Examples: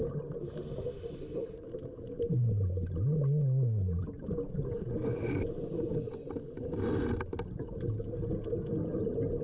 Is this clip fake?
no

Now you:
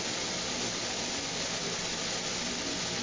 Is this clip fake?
no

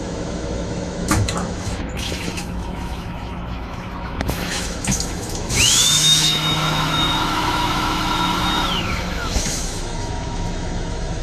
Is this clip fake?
yes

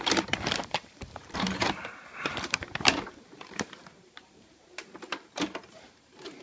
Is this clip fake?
yes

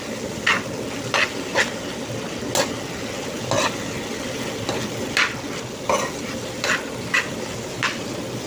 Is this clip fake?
no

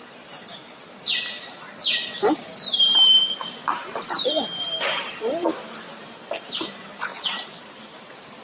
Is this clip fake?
yes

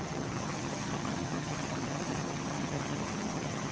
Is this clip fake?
yes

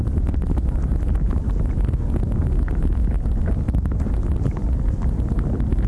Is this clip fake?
no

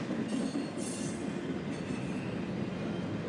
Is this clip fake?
no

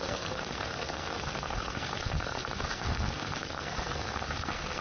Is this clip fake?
yes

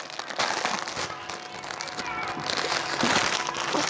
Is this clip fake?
no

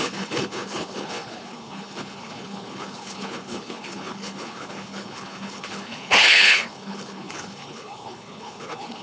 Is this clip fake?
yes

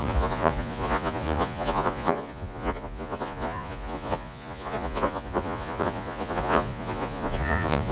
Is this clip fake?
yes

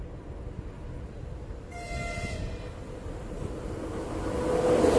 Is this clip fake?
no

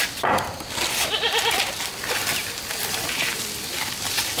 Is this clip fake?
yes